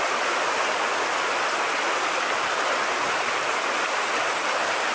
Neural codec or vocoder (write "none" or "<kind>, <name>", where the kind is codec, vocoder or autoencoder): none